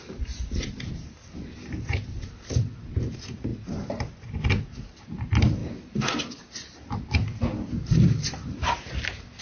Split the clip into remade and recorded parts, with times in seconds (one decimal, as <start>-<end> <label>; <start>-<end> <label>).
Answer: 0.0-1.2 remade; 1.2-2.9 recorded; 2.9-3.5 remade; 3.5-5.0 recorded; 5.0-9.4 remade